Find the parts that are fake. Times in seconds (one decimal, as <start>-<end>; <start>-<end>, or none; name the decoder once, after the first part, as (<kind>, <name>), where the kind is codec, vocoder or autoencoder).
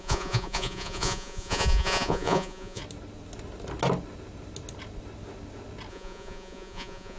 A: 0.0-2.8 (vocoder, Vocos); 5.9-7.2